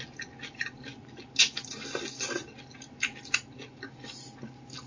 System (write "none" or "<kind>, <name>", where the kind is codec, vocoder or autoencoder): none